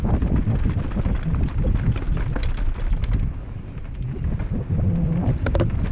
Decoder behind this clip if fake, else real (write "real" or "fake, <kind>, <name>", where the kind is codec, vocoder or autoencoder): real